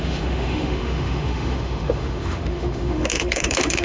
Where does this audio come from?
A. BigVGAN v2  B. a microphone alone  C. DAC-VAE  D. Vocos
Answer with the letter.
C